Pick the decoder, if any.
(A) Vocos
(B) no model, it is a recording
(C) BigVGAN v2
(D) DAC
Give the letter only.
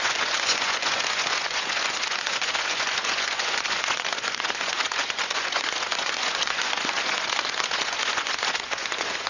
A